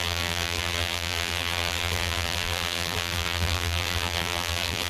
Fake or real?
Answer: fake